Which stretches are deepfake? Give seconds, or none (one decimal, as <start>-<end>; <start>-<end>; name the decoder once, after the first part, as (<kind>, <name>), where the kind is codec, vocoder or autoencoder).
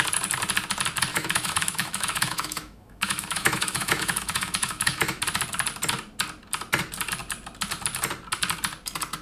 1.1-5.2 (autoencoder, DAC-VAE)